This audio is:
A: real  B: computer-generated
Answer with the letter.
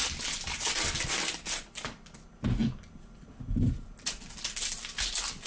A